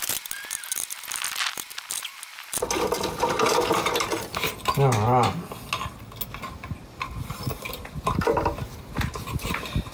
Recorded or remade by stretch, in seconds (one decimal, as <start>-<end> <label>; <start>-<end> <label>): 0.0-7.5 recorded; 7.5-8.9 remade; 8.9-9.9 recorded

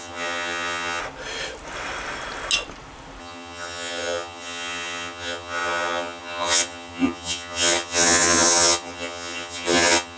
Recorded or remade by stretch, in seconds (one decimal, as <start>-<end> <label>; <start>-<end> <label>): 0.0-1.0 remade; 1.0-3.2 recorded; 3.2-10.2 remade

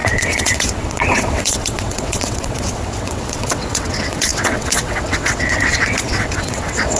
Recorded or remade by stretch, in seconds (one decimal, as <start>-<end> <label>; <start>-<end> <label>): 0.0-7.0 remade

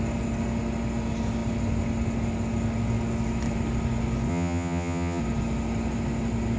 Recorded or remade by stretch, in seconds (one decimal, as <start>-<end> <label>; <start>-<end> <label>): 0.0-4.3 recorded; 4.3-5.2 remade; 5.2-6.6 recorded

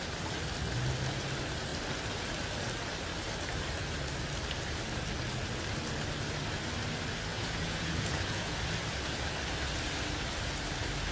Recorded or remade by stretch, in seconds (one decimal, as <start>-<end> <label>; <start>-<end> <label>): 0.0-7.3 recorded; 7.3-8.6 remade; 8.6-11.1 recorded

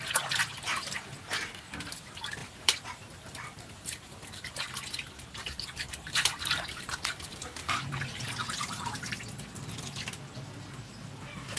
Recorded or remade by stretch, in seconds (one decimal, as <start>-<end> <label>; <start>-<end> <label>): 0.0-2.4 recorded; 2.4-4.5 remade; 4.5-5.4 recorded; 5.4-9.2 remade; 9.2-11.6 recorded